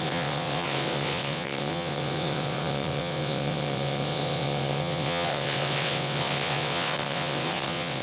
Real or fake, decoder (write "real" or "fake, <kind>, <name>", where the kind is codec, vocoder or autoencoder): fake, vocoder, WaveNeXt